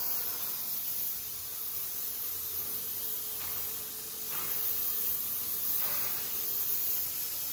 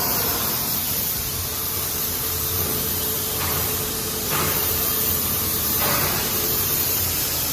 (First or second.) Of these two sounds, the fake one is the second